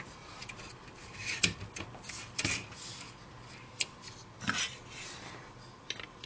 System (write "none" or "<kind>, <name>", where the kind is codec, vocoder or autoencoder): none